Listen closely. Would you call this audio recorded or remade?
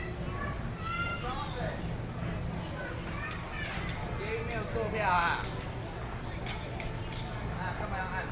recorded